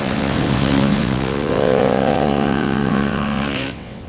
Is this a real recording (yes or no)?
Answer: no